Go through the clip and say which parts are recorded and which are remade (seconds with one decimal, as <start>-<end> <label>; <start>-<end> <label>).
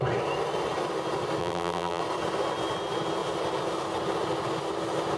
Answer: 0.0-1.4 recorded; 1.4-2.0 remade; 2.0-5.2 recorded